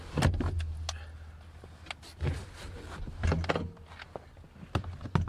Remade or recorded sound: recorded